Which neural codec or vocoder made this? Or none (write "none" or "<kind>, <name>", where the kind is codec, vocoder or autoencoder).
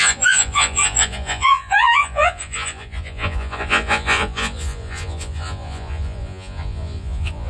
vocoder, Vocos